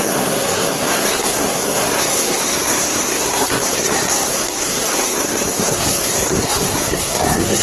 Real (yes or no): no